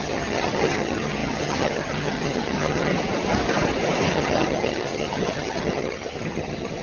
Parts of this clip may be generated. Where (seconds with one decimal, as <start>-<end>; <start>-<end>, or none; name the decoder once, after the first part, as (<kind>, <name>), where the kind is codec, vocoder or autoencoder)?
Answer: 0.0-2.9 (vocoder, HiFi-GAN); 4.1-6.8